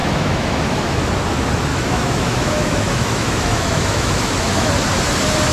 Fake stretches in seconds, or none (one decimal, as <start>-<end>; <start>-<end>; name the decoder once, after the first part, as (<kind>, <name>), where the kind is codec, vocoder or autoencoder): 0.0-1.1 (autoencoder, DAC-VAE); 1.7-4.7